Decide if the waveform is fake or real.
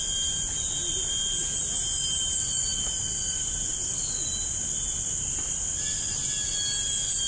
real